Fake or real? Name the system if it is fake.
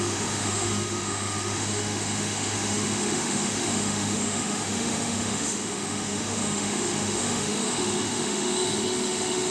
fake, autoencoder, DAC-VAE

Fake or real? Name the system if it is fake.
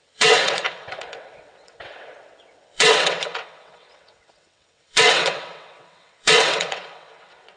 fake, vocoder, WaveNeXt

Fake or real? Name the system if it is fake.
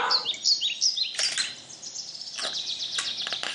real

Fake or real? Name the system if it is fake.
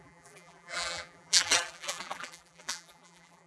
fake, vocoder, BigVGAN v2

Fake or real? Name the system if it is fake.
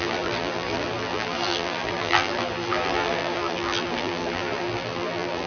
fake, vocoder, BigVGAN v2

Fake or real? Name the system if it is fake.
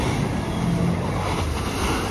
real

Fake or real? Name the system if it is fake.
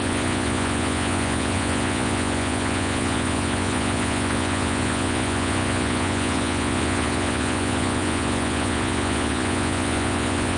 fake, vocoder, Vocos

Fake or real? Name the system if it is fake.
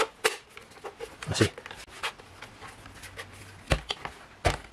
real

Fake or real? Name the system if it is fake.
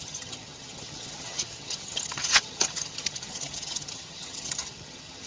fake, vocoder, HiFi-GAN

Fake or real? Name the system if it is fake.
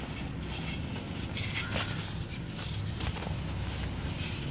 real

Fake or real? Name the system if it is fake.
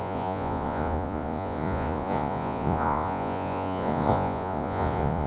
fake, vocoder, Vocos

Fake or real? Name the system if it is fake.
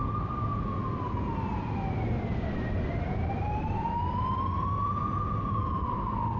real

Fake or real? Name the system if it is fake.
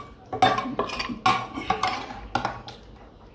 real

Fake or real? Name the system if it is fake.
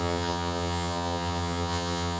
fake, vocoder, HiFi-GAN